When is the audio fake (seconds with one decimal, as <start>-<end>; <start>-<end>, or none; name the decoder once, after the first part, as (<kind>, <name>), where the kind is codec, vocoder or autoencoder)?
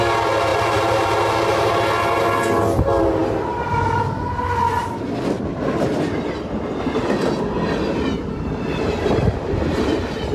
0.5-2.2 (vocoder, BigVGAN v2)